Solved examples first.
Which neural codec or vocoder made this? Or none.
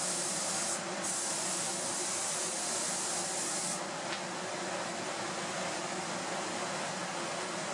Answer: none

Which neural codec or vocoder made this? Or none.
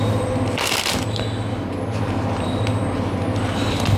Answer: none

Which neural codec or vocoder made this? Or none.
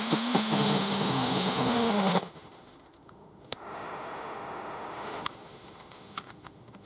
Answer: autoencoder, DAC-VAE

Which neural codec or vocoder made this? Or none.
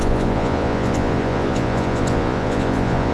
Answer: vocoder, Vocos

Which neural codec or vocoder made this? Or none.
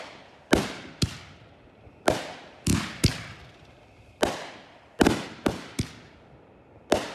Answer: none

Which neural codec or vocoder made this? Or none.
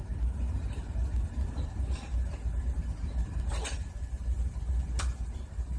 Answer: none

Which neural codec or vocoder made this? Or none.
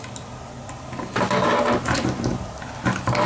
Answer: none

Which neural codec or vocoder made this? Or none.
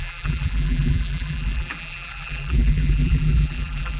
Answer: vocoder, BigVGAN v2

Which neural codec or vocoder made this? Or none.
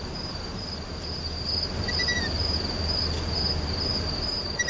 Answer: vocoder, BigVGAN v2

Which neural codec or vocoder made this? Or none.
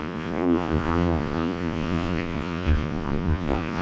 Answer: vocoder, Vocos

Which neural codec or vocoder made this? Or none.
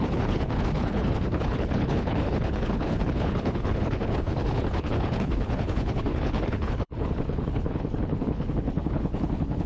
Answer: codec, HILCodec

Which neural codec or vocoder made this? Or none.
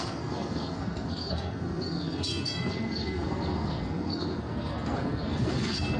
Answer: codec, SNAC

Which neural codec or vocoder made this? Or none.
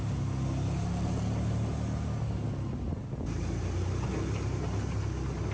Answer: none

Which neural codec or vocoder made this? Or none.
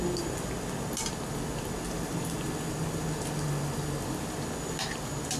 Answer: none